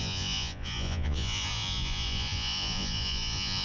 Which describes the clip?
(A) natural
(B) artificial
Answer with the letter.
B